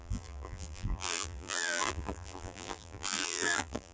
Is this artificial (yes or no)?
yes